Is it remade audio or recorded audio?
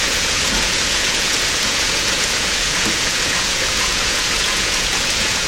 remade